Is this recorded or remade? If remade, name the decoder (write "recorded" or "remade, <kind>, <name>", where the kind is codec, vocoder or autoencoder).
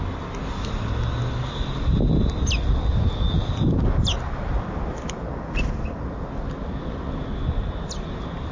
recorded